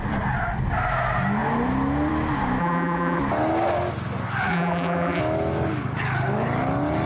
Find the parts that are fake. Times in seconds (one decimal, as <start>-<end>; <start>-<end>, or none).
2.6-3.2; 4.5-5.2